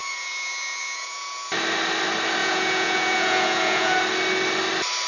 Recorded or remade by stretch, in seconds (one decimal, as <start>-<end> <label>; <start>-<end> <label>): 0.0-1.5 remade; 1.5-2.4 recorded; 2.4-4.0 remade; 4.0-5.1 recorded